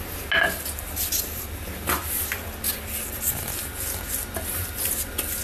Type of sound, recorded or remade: recorded